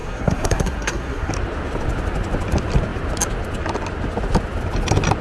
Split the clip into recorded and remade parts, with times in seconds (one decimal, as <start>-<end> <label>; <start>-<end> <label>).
0.0-1.3 remade; 1.3-5.2 recorded